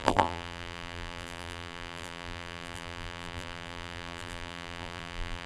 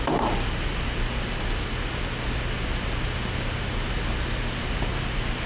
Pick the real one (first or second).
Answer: second